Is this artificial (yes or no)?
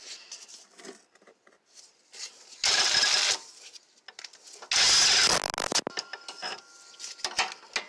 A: no